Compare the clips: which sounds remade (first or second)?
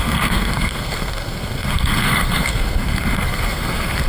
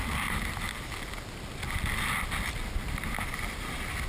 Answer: first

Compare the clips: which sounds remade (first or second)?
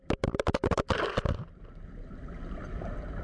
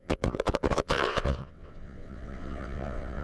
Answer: second